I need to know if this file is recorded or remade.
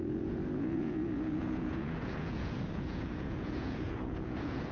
remade